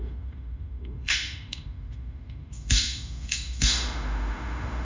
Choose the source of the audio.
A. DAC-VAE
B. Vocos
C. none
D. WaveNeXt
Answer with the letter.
A